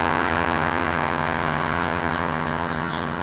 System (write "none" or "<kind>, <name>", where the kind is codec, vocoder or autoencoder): vocoder, HiFi-GAN